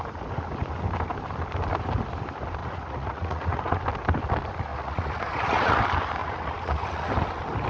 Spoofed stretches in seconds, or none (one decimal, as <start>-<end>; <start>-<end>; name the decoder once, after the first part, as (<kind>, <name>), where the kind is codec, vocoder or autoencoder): 2.6-3.8 (vocoder, Vocos); 4.7-5.8; 6.2-7.1